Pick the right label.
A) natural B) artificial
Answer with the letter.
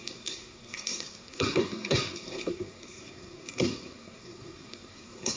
B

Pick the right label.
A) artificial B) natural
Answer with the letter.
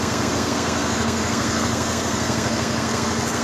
A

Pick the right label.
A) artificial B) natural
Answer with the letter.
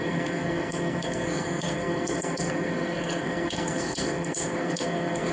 A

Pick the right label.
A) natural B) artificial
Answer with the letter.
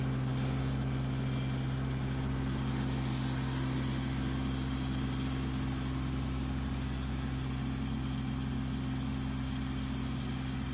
A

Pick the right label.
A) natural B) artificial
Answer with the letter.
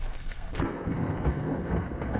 B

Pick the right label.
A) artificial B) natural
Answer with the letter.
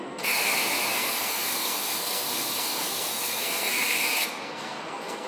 A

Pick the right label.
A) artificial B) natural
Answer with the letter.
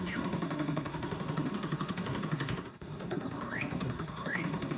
A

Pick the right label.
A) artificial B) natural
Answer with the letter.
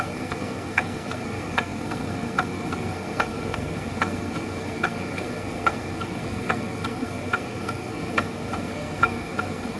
A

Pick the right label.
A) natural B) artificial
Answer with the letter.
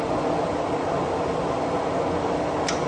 A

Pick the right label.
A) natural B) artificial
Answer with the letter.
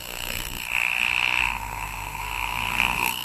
B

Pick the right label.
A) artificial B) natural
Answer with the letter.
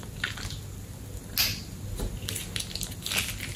B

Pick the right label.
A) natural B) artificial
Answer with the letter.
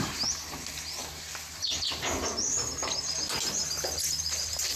A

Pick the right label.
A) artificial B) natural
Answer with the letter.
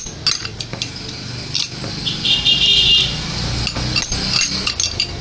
B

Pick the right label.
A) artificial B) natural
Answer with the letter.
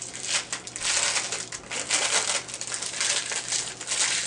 B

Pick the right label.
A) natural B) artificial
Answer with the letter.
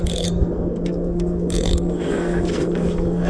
B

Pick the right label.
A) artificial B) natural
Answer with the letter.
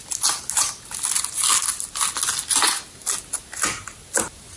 B